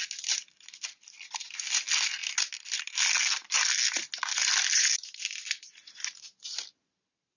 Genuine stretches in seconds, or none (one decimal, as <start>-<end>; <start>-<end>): 0.0-7.4